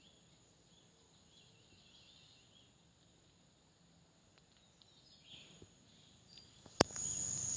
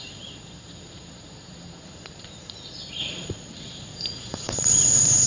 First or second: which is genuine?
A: first